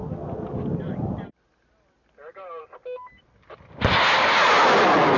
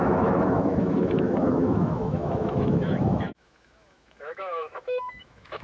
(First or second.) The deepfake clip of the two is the second